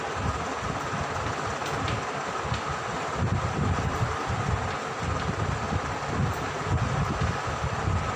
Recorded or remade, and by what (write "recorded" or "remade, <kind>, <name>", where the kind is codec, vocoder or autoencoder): recorded